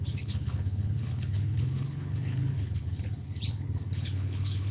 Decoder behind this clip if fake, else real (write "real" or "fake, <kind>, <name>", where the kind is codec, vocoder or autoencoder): fake, codec, HILCodec